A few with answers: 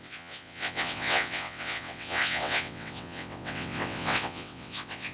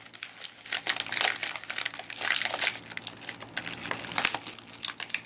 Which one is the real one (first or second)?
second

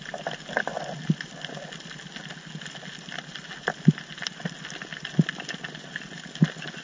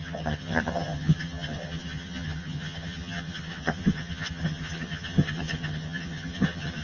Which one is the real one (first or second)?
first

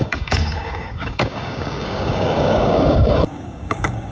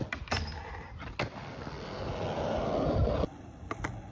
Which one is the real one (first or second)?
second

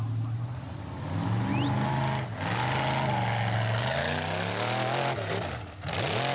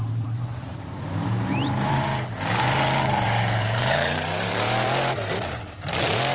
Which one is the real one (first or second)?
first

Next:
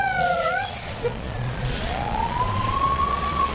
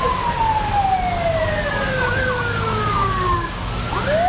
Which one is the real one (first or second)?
second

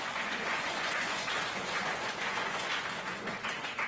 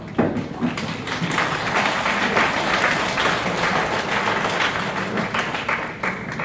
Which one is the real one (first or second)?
second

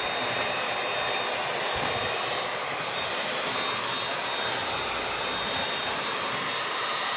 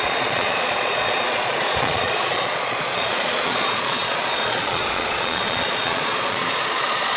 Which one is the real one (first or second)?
first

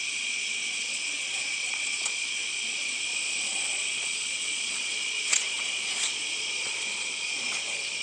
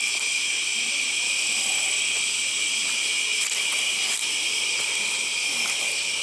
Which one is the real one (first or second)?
second